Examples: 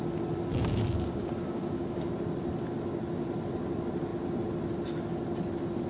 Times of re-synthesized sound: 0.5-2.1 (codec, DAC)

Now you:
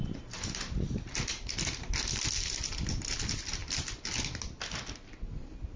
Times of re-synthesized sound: none

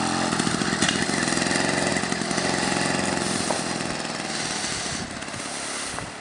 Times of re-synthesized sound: none

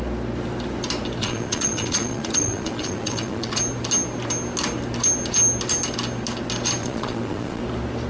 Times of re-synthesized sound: 1.2-3.6 (vocoder, Vocos); 6.8-7.6

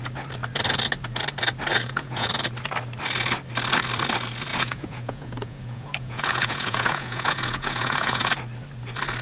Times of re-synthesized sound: 1.7-2.3 (vocoder, Vocos); 4.5-8.3

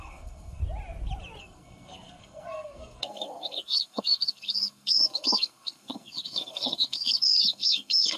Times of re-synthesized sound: 0.0-0.6 (codec, SNAC); 1.4-8.2

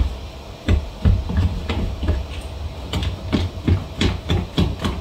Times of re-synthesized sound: none

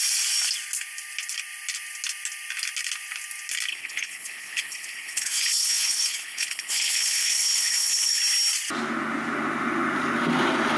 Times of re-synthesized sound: 3.7-8.2 (codec, HILCodec)